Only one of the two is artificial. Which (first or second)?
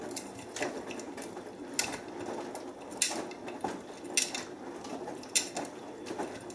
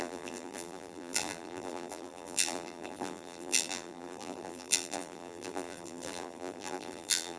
second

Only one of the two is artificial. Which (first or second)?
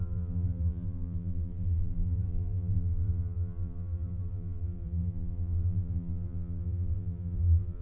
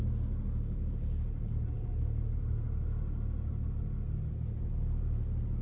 first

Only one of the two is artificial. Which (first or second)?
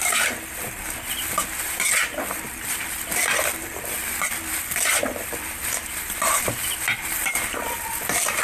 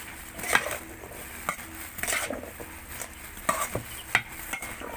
first